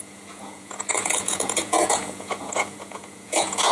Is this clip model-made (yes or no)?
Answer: yes